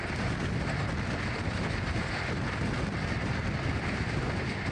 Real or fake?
real